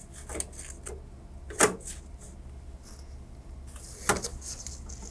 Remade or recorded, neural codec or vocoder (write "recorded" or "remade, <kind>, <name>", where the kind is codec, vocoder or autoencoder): recorded